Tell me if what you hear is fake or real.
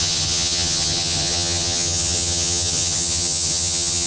fake